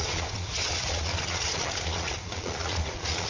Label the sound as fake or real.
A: fake